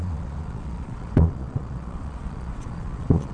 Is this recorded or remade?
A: remade